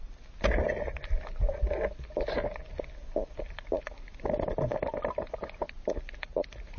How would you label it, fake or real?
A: real